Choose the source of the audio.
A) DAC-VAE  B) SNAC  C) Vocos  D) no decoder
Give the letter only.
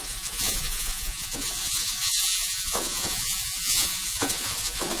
C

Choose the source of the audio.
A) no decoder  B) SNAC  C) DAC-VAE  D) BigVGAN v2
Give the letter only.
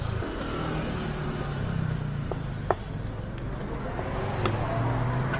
A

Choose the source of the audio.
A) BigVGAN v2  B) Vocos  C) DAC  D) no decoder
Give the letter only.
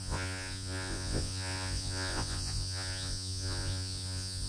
B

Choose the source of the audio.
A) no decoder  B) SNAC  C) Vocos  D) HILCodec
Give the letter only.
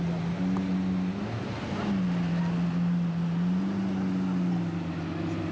A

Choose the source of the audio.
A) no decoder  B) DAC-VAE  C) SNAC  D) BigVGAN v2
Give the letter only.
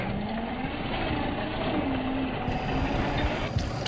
A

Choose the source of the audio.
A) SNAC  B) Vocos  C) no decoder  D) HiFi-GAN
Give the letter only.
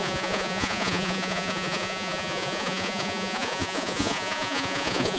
B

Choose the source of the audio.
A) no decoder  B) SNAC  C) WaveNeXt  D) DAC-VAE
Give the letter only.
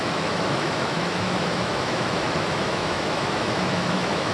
D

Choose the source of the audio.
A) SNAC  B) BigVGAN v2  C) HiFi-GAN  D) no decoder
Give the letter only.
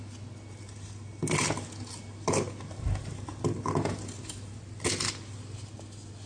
D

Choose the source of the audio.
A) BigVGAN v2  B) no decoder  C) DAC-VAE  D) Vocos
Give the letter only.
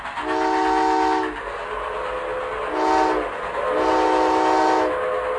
B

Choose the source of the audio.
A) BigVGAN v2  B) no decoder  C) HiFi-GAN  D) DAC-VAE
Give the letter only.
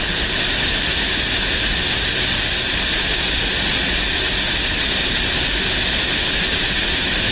B